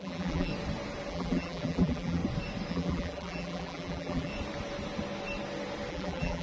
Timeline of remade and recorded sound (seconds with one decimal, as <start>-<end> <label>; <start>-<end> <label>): 0.0-0.5 remade; 0.5-1.1 recorded; 1.1-2.2 remade; 2.2-2.7 recorded; 2.7-4.3 remade; 4.3-5.9 recorded; 5.9-6.4 remade